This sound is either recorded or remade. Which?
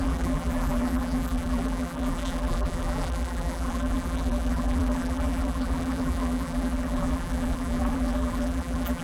remade